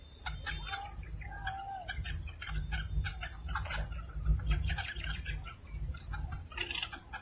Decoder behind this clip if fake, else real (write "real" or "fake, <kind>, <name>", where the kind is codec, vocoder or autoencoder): real